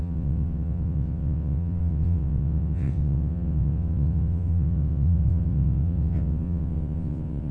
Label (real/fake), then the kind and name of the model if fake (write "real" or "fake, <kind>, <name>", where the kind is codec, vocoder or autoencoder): fake, vocoder, WaveNeXt